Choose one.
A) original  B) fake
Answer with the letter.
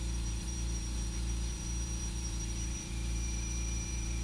B